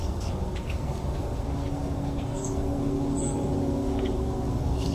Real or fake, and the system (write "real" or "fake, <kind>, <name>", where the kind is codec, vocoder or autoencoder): fake, codec, SNAC